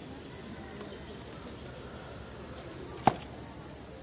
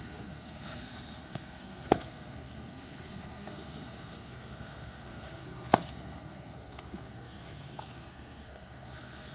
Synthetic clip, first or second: second